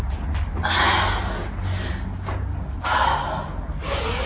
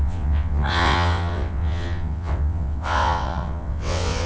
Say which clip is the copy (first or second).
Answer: second